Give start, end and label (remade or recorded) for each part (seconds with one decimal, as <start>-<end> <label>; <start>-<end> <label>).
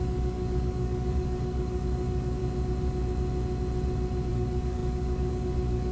0.0-2.4 remade; 2.4-4.3 recorded; 4.3-5.9 remade